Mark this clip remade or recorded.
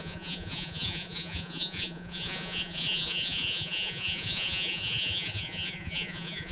remade